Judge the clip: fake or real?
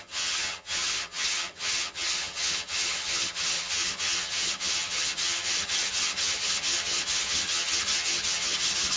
fake